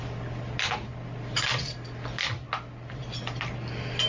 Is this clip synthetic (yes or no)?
no